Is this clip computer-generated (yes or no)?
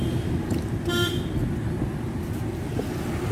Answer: no